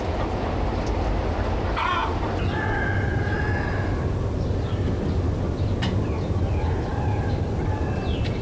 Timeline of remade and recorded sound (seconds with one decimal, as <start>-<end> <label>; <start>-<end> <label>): 0.0-8.4 recorded